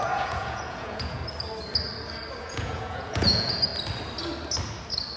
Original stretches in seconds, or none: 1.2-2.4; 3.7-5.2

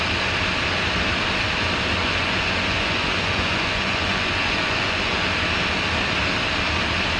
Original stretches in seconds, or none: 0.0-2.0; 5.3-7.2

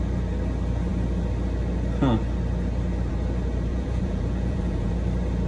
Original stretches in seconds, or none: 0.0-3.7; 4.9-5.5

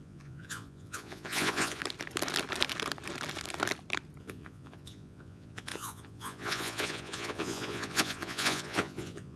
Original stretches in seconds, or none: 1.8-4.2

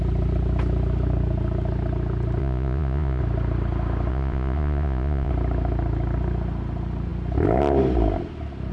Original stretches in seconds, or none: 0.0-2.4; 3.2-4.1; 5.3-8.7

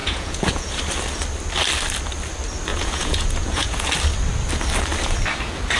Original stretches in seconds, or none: 0.8-2.7; 3.9-5.8

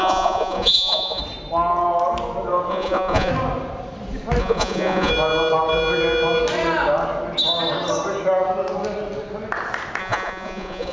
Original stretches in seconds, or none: 1.2-2.7; 3.3-4.4; 5.1-10.0

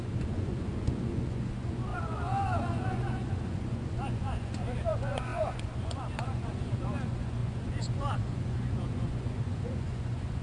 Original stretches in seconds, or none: none